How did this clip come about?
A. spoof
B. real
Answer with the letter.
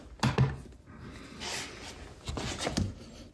B